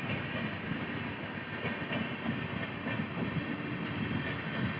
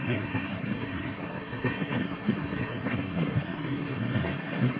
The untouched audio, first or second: first